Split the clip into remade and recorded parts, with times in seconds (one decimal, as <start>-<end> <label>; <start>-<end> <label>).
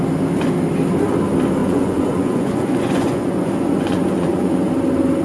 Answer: 0.0-1.6 recorded; 1.6-4.7 remade; 4.7-5.2 recorded